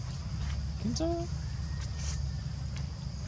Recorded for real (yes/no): yes